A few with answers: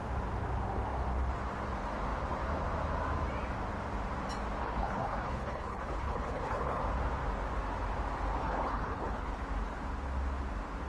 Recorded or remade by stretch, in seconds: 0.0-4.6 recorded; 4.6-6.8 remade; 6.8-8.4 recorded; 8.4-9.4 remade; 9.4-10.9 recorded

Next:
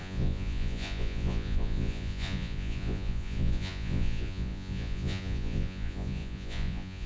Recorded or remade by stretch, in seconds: 0.0-7.1 remade

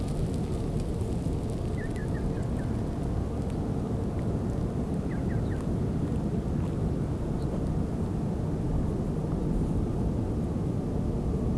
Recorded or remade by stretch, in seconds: 0.0-11.6 recorded

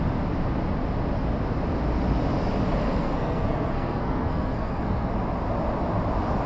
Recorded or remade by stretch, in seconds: 0.0-3.0 recorded; 3.0-5.1 remade; 5.1-6.5 recorded